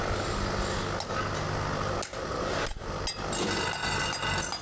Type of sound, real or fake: real